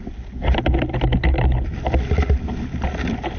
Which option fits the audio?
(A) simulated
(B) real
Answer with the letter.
B